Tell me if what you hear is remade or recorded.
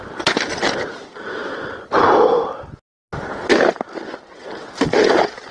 recorded